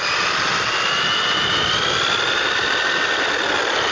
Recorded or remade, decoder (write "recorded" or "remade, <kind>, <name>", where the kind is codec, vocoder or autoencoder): recorded